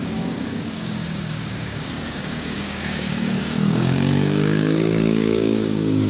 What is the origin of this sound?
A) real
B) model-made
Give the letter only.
B